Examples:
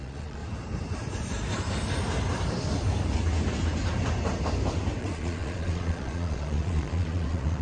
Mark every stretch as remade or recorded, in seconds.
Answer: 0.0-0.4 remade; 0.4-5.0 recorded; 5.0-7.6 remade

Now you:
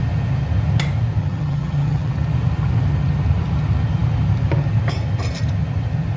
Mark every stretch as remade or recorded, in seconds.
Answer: 0.0-1.2 recorded; 1.2-2.1 remade; 2.1-6.2 recorded

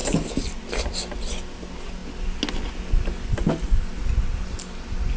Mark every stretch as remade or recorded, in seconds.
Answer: 0.0-5.2 recorded

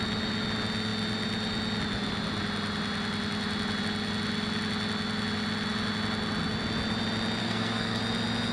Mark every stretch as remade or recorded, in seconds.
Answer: 0.0-7.4 recorded; 7.4-8.0 remade; 8.0-8.5 recorded

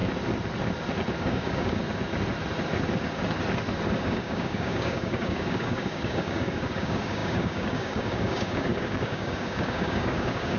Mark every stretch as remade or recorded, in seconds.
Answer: 0.0-1.2 recorded; 1.2-1.8 remade; 1.8-4.0 recorded; 4.0-10.6 remade

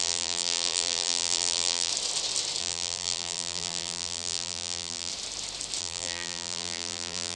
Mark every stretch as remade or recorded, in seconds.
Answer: 0.0-1.9 remade; 1.9-2.6 recorded; 2.6-5.1 remade; 5.1-5.8 recorded; 5.8-7.4 remade

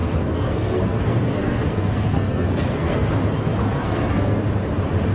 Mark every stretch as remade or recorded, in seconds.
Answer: 0.0-3.1 remade; 3.1-3.6 recorded; 3.6-4.4 remade; 4.4-5.1 recorded